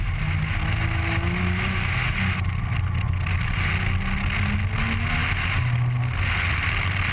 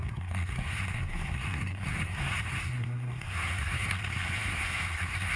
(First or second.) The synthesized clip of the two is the second